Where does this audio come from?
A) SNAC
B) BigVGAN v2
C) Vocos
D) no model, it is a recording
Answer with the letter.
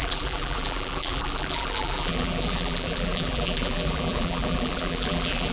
B